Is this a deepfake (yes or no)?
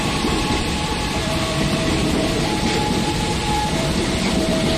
yes